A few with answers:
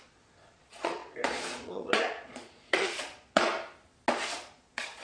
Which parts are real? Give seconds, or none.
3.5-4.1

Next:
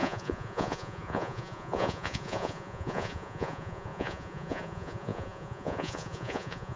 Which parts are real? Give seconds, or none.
none

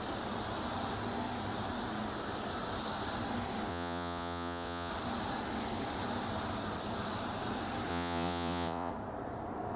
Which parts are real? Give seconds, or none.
0.0-3.7; 4.9-7.9; 8.9-9.8

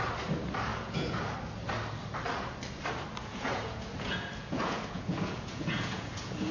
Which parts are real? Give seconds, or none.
0.0-0.7; 1.3-3.2

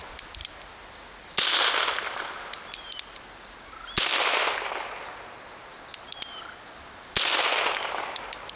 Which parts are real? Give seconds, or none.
0.0-8.6

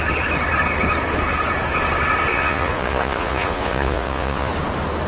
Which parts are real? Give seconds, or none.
0.0-2.3; 4.5-5.1